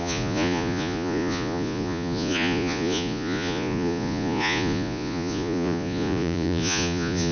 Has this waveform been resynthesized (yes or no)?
yes